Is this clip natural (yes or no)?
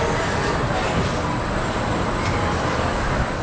yes